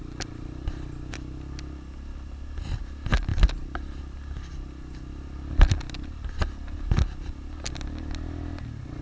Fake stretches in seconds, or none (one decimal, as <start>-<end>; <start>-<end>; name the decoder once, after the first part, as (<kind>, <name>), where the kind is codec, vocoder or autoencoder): none